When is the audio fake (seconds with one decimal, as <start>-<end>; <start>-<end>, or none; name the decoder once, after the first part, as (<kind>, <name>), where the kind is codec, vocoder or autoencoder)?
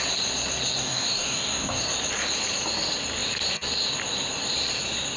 0.8-1.8 (codec, DAC)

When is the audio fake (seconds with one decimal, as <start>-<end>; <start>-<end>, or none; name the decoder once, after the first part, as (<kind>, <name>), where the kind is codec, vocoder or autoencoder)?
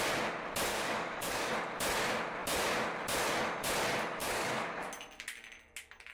0.7-1.5 (codec, DAC); 4.2-4.7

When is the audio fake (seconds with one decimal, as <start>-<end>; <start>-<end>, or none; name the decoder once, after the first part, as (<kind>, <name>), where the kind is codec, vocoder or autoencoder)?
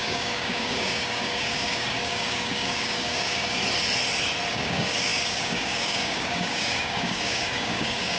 0.0-3.6 (codec, DAC); 4.5-8.2